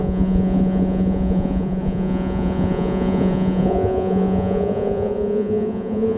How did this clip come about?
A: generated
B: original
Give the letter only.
A